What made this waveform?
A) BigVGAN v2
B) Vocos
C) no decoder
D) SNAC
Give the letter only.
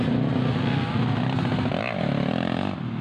C